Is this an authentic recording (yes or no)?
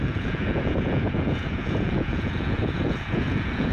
no